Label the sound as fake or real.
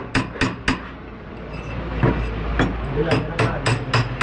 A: real